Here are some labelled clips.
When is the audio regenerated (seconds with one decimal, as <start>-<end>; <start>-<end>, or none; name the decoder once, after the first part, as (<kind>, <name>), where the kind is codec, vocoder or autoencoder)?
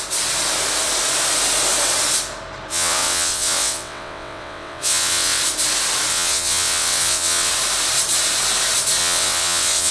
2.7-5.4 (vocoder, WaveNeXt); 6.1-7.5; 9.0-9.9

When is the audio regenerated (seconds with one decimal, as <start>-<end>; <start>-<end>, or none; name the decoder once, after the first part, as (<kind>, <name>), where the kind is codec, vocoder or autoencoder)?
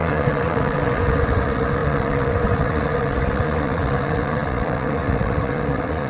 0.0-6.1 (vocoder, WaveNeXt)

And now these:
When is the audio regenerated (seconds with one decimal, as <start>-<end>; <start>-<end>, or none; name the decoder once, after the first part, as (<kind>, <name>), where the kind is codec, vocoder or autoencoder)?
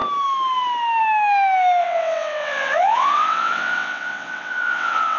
1.8-5.2 (vocoder, WaveNeXt)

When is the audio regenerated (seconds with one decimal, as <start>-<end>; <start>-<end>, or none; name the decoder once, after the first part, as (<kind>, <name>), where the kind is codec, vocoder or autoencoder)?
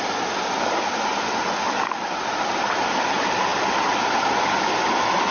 none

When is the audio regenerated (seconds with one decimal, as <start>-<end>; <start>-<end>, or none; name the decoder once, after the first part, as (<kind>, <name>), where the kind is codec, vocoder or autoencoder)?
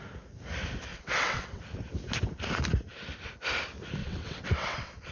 0.9-1.6 (vocoder, WaveNeXt); 4.0-5.1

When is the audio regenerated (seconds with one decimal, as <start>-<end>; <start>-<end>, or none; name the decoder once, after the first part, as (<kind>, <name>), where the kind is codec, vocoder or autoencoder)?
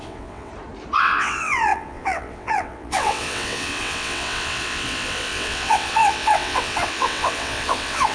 0.0-0.5 (vocoder, WaveNeXt); 1.0-8.1